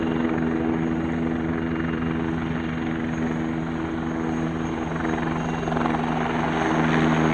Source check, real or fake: real